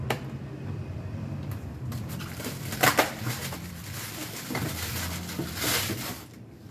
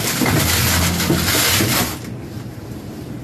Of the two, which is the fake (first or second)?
first